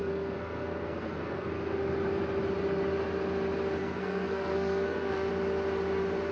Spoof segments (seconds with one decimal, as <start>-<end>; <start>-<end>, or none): 0.0-1.8; 3.8-5.3

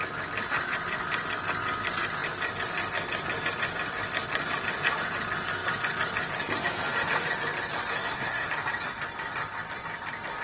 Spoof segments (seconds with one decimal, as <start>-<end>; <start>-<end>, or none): 7.9-8.5

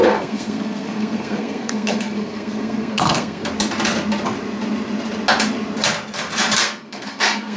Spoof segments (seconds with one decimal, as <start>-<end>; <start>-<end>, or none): 0.0-3.5; 6.6-7.6

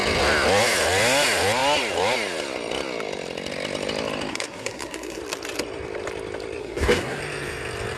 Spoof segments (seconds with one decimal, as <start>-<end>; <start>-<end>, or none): 4.3-5.2; 6.6-7.2

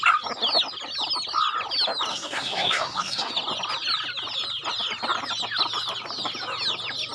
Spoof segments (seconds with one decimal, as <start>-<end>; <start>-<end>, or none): 2.1-3.3

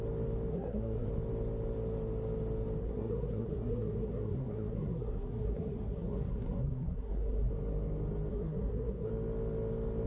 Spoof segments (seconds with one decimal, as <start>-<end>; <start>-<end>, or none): 0.5-1.1; 2.8-7.5; 8.3-9.1

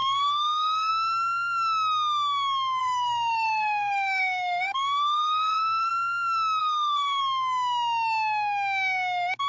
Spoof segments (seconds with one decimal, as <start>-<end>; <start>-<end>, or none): 0.0-0.9; 2.8-5.9; 6.6-7.2